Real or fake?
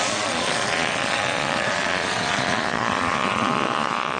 fake